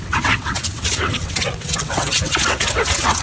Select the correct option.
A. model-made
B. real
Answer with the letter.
A